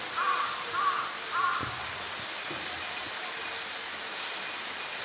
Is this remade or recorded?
recorded